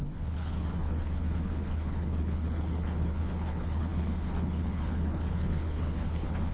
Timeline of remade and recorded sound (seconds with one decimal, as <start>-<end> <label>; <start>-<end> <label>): 0.0-6.5 remade